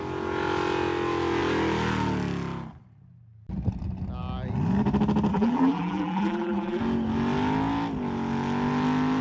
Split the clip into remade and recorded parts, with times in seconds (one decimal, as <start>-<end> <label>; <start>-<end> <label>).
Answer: 0.0-5.3 recorded; 5.3-6.8 remade; 6.8-9.2 recorded